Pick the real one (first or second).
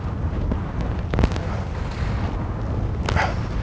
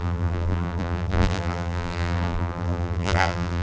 first